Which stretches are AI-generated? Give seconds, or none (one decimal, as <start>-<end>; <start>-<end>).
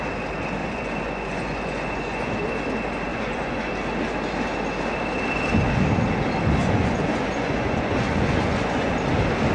0.6-2.3; 3.1-3.7; 6.6-8.9